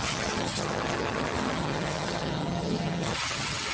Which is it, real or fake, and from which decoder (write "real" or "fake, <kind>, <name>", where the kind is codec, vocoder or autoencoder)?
fake, vocoder, HiFi-GAN